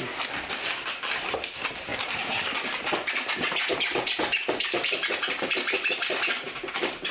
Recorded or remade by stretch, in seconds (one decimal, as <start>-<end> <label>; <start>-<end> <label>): 0.0-7.1 recorded